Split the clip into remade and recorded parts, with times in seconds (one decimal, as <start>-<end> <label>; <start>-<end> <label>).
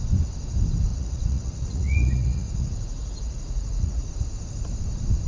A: 0.0-0.9 recorded; 0.9-4.1 remade; 4.1-5.3 recorded